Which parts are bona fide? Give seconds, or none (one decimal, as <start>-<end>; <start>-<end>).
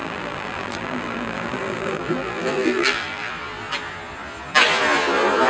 3.3-5.5